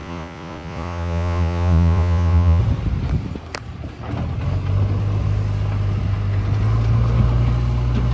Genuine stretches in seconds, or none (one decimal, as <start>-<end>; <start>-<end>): 2.6-8.1